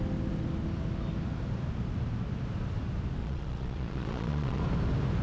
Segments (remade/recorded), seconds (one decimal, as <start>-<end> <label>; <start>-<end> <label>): 0.0-3.2 recorded; 3.2-4.6 remade; 4.6-5.2 recorded